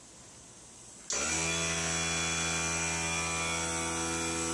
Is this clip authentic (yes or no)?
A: yes